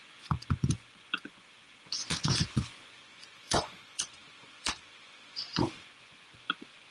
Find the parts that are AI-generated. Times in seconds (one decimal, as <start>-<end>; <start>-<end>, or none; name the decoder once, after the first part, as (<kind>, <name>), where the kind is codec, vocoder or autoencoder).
0.0-6.9 (vocoder, Vocos)